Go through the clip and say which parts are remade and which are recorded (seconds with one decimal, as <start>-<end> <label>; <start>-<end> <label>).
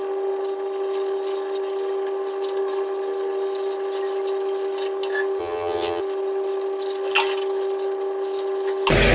0.0-5.4 recorded; 5.4-6.0 remade; 6.0-9.1 recorded